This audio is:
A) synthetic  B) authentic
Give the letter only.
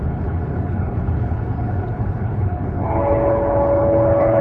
A